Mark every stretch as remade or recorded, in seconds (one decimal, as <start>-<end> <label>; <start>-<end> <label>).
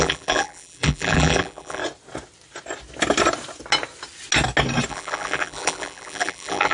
0.0-1.8 remade; 1.8-4.9 recorded; 4.9-6.7 remade